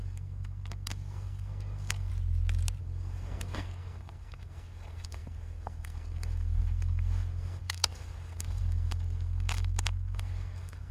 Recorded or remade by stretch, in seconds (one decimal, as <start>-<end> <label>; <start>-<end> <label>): 0.0-2.1 remade; 2.1-2.8 recorded; 2.8-10.9 remade